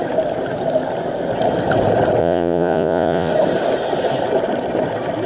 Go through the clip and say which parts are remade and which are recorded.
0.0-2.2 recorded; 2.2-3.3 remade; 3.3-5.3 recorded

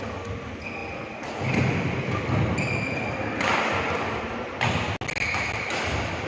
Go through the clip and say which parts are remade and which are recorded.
0.0-6.3 recorded

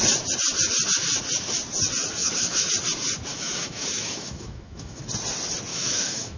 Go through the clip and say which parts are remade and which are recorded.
0.0-2.2 recorded; 2.2-2.7 remade; 2.7-3.3 recorded; 3.3-5.0 remade; 5.0-5.7 recorded; 5.7-6.4 remade

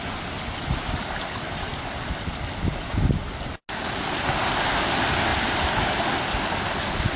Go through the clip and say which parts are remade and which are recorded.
0.0-7.2 recorded

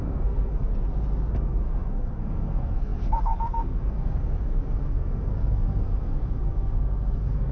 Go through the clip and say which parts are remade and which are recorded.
0.0-0.7 remade; 0.7-1.3 recorded; 1.3-7.5 remade

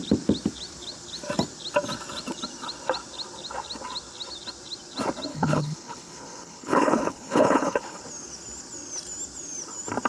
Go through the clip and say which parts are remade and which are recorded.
0.0-5.3 recorded; 5.3-8.0 remade; 8.0-10.1 recorded